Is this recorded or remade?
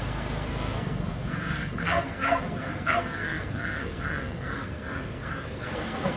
remade